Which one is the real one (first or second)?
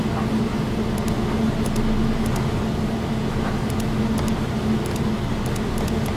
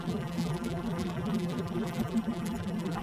first